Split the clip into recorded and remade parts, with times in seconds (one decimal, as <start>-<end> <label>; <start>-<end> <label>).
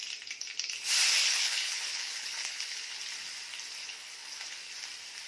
0.0-1.2 recorded; 1.2-3.0 remade; 3.0-3.8 recorded; 3.8-4.6 remade; 4.6-5.3 recorded